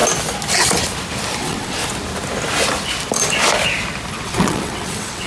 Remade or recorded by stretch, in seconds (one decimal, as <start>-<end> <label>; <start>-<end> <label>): 0.0-1.4 recorded; 1.4-1.8 remade; 1.8-4.1 recorded; 4.1-5.3 remade